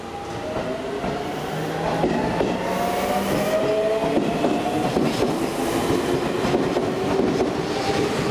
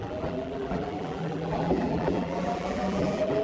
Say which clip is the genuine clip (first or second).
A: first